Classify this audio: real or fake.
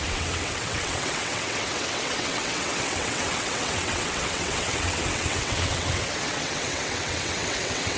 fake